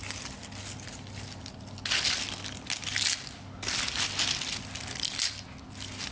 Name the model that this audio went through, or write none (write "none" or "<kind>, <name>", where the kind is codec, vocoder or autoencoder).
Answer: none